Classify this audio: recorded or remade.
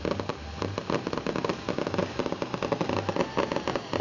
recorded